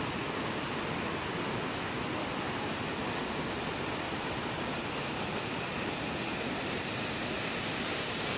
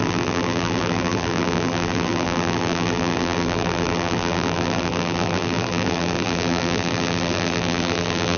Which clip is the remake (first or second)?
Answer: second